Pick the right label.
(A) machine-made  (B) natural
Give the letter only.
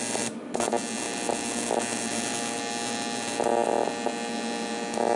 B